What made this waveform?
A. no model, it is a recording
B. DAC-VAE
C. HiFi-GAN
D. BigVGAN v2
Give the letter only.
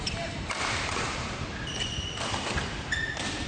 D